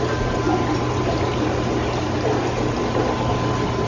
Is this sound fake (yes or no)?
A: no